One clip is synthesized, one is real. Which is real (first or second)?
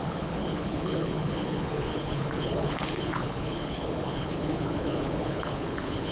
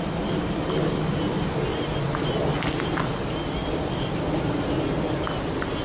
second